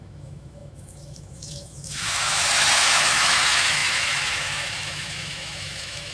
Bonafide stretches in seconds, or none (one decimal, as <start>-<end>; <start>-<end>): none